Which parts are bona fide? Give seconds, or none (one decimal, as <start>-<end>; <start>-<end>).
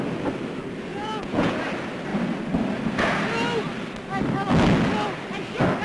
0.0-0.9; 1.6-5.8